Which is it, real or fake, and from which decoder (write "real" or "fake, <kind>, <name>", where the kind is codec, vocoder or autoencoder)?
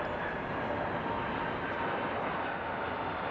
real